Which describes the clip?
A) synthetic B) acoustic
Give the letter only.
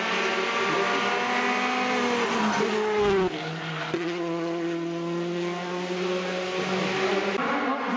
B